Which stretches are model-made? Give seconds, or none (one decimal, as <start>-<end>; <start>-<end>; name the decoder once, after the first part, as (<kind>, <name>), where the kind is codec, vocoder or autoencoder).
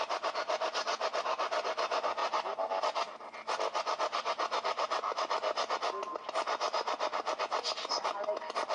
2.2-2.8 (vocoder, BigVGAN v2)